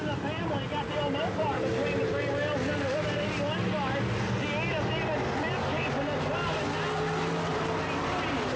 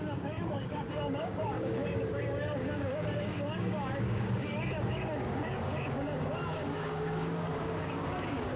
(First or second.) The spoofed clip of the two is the second